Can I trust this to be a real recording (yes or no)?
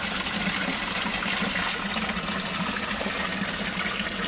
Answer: yes